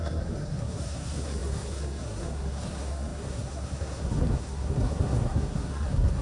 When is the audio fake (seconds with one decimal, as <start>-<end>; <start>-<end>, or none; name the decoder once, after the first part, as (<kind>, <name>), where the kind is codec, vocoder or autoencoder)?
0.0-6.2 (codec, SNAC)

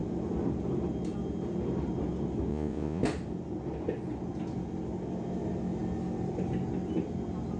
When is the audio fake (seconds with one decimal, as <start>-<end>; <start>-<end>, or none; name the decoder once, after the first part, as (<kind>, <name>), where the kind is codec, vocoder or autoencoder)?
2.5-3.0 (vocoder, Vocos)